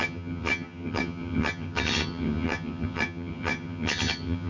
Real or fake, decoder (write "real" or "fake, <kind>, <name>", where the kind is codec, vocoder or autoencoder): fake, vocoder, HiFi-GAN